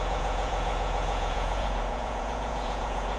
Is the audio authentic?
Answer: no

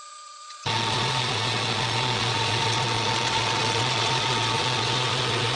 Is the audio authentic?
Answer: no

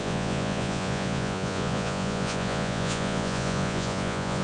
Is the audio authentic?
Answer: no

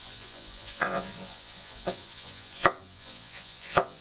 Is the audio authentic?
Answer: no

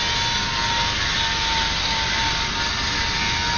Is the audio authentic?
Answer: yes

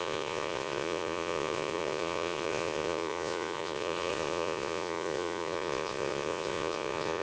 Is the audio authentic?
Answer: no